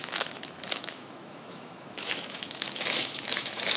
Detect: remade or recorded remade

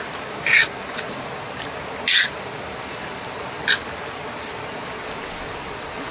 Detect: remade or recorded recorded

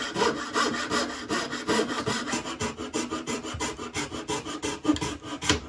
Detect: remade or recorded recorded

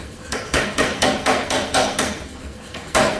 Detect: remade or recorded remade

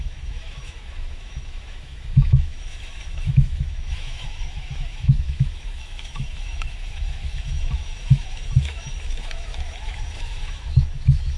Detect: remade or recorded remade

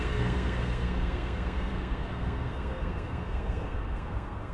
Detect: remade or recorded remade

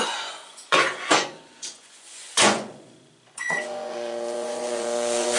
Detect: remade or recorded remade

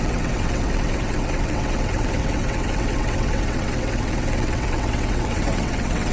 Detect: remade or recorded remade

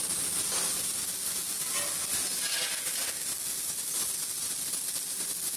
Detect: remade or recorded recorded